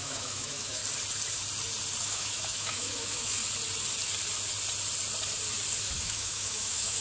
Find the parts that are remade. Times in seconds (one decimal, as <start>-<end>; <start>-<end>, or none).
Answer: 0.0-0.8; 2.0-3.4; 5.8-7.0